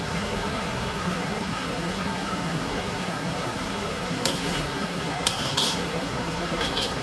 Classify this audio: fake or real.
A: fake